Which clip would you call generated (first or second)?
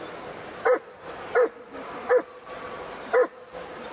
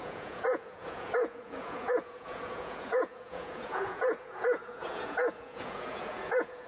second